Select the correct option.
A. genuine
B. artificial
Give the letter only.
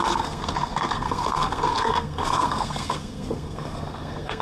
B